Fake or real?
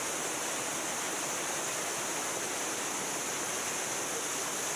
real